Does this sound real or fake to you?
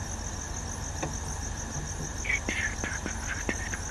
real